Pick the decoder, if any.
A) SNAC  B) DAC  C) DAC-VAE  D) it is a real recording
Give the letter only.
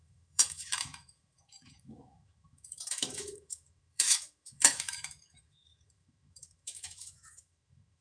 C